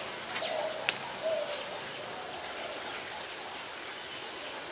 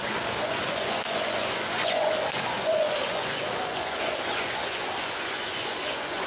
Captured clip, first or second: first